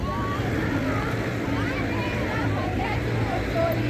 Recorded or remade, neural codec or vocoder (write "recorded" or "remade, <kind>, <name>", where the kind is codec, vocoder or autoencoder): recorded